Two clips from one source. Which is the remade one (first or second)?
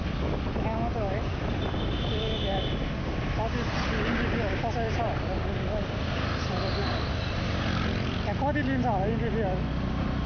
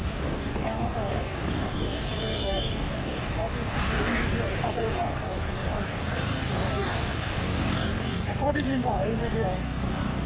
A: second